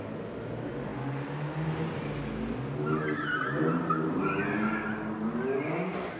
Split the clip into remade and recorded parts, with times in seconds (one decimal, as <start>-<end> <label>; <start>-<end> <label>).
0.0-6.2 recorded